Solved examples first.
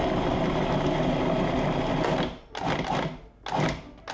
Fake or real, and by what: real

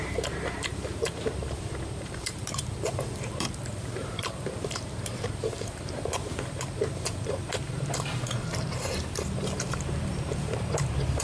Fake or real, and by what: fake, vocoder, BigVGAN v2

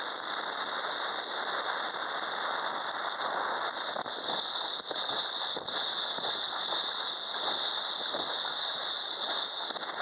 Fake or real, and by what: real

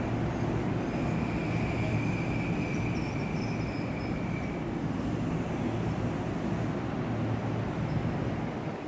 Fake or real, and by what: real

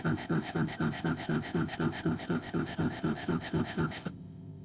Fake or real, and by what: fake, codec, ZipCodec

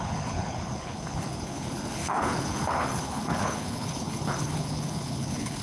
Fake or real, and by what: fake, codec, HILCodec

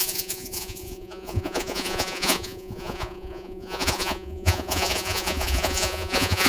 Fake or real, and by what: fake, vocoder, Vocos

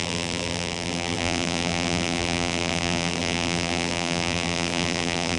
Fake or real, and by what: fake, vocoder, BigVGAN v2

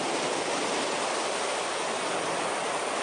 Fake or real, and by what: real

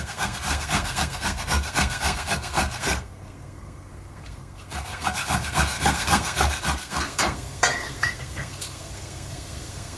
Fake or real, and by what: fake, codec, SNAC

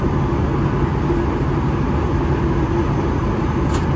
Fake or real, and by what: real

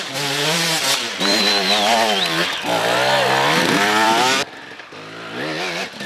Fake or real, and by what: fake, vocoder, BigVGAN v2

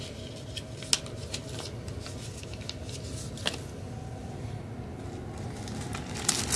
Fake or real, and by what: real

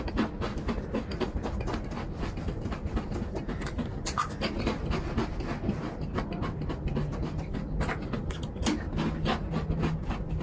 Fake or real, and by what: real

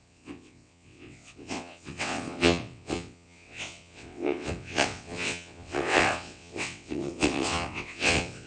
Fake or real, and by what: fake, vocoder, WaveNeXt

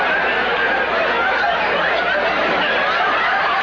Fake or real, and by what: real